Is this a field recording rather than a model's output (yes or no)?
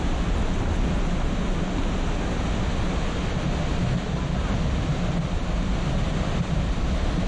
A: yes